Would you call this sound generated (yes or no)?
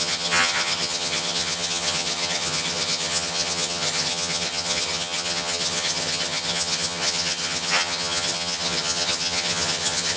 yes